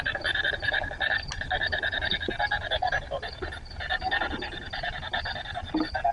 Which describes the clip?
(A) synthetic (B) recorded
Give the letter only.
B